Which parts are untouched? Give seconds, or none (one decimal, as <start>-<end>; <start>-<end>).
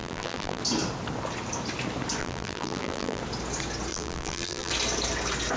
0.6-2.2; 3.2-3.9; 4.7-5.6